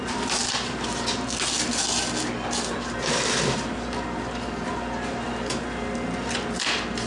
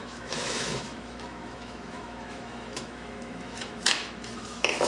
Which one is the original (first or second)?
first